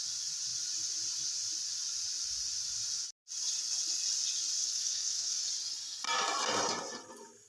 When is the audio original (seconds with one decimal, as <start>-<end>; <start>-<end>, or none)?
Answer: 0.0-4.6; 5.5-7.5